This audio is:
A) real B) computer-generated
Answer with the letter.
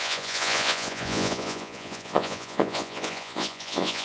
B